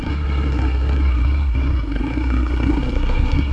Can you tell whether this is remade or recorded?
remade